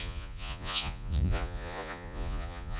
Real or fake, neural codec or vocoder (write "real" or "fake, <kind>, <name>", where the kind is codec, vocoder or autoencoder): fake, vocoder, Vocos